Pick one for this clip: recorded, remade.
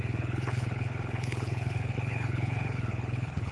remade